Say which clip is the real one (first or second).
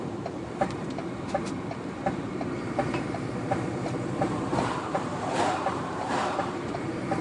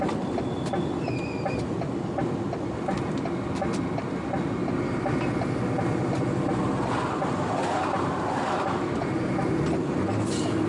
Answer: second